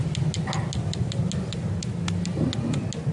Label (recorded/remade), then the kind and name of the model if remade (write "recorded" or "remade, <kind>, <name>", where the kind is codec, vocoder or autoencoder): recorded